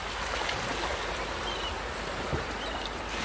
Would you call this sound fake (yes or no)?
no